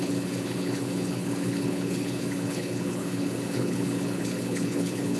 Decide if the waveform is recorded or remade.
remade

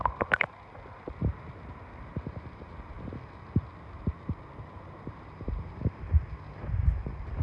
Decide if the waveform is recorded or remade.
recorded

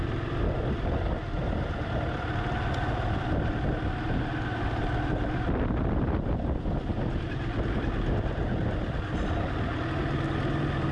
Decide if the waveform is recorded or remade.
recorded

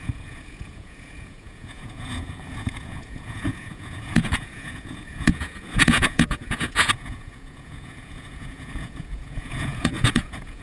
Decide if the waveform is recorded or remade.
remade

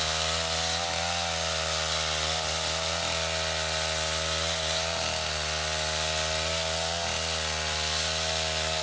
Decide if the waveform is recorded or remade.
recorded